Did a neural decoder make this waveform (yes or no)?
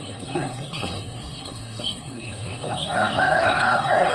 yes